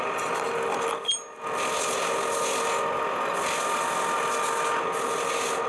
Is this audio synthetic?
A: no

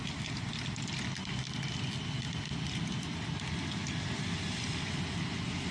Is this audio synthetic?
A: no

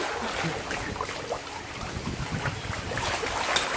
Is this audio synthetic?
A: no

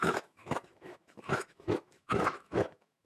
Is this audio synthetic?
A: yes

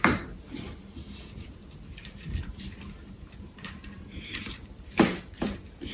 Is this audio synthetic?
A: yes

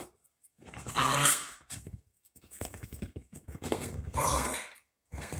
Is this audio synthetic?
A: yes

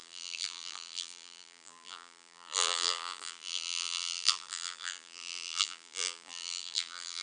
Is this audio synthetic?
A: yes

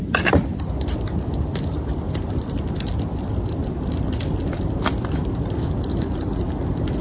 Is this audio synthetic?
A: no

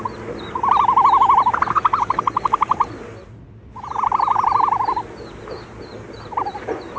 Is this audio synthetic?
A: no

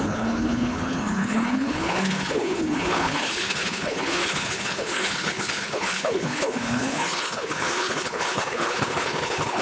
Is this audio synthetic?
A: yes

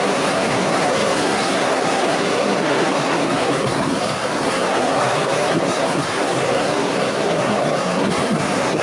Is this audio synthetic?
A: yes